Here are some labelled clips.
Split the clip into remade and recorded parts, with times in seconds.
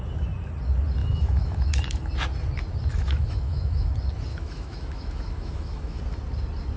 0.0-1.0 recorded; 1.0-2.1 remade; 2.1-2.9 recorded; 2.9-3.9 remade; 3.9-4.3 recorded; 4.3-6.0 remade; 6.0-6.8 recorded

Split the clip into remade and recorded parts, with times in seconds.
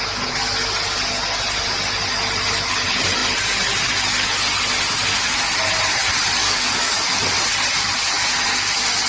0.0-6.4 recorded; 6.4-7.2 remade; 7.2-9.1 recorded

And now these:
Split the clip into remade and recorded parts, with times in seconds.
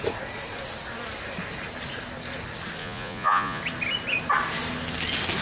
0.0-2.8 recorded; 2.8-3.6 remade; 3.6-5.4 recorded